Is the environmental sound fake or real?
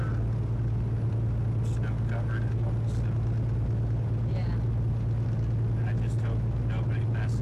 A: real